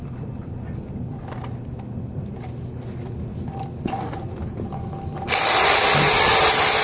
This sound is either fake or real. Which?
real